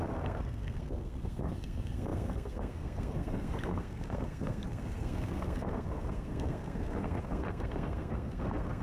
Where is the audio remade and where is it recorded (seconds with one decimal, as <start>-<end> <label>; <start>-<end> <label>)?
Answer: 0.0-8.8 remade